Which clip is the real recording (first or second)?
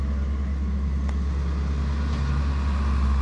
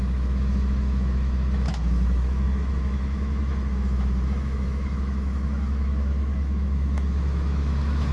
first